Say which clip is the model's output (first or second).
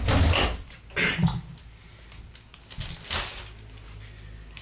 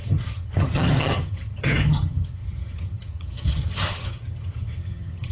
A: second